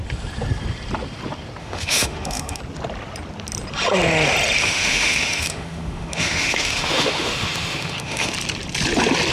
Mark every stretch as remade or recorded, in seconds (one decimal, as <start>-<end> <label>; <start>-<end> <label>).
0.0-1.6 recorded; 1.6-2.6 remade; 2.6-4.6 recorded; 4.6-8.3 remade; 8.3-9.3 recorded